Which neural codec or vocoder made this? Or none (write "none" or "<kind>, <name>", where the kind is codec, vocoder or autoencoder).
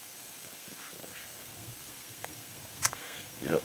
codec, SNAC